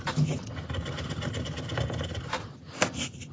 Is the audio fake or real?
real